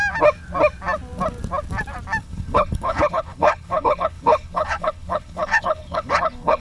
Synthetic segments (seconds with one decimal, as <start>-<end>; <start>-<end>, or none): 2.2-6.6

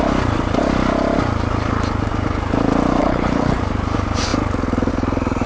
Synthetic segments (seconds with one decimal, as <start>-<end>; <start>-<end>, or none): 3.0-3.6